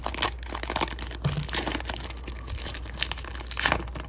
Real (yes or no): yes